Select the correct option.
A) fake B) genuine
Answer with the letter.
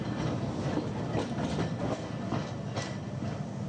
B